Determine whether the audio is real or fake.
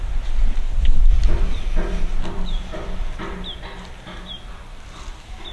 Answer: real